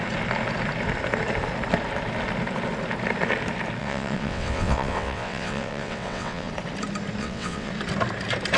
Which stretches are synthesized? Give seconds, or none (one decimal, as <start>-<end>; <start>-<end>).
3.8-6.5; 7.2-7.7